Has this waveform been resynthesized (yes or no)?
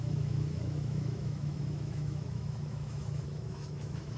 yes